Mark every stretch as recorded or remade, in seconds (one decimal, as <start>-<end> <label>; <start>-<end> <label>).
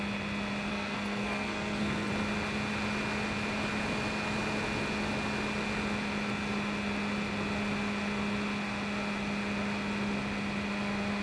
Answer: 0.0-0.7 recorded; 0.7-2.1 remade; 2.1-11.2 recorded